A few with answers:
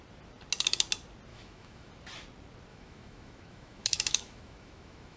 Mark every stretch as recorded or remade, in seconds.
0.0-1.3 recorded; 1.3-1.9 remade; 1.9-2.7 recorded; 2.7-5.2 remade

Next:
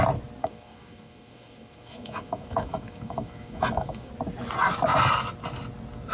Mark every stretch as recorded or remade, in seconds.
0.0-0.4 recorded; 0.4-4.1 remade; 4.1-6.1 recorded